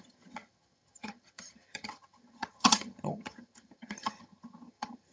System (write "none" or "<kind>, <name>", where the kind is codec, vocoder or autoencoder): vocoder, HiFi-GAN